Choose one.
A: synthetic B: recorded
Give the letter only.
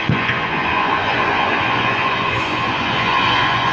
A